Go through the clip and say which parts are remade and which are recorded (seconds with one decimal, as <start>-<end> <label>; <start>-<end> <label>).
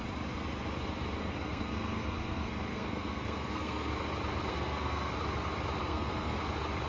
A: 0.0-1.2 recorded; 1.2-3.9 remade; 3.9-4.5 recorded; 4.5-5.1 remade; 5.1-5.8 recorded; 5.8-6.4 remade; 6.4-6.9 recorded